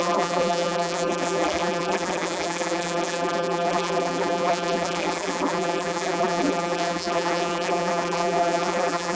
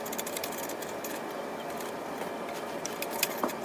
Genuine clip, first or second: second